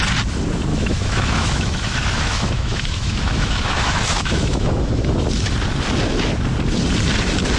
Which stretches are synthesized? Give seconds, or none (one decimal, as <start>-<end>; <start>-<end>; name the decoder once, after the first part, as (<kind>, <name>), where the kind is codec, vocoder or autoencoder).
0.7-5.1 (autoencoder, DAC-VAE)